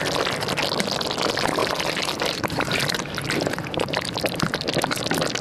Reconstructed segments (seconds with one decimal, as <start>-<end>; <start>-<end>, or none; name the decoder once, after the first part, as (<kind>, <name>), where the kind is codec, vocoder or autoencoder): 1.6-4.8 (vocoder, BigVGAN v2)